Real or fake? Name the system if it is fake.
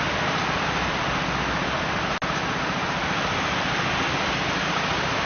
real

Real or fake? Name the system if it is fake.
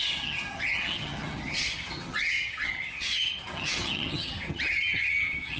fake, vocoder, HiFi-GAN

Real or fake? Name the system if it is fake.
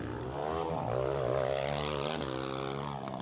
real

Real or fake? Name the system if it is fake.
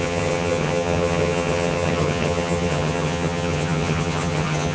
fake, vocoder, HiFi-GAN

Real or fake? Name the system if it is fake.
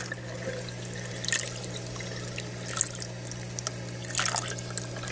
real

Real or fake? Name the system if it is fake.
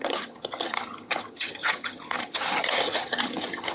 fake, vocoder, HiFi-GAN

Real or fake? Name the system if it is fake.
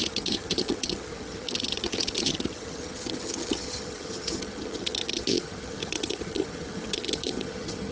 fake, vocoder, HiFi-GAN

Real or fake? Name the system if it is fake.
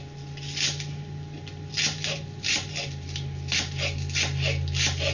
real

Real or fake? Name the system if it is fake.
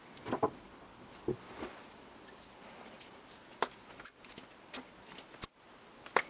real